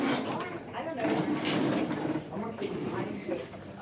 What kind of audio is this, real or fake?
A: fake